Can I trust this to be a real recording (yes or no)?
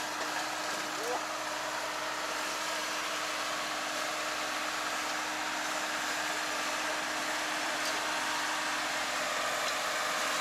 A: yes